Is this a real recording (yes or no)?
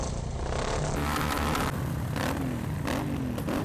yes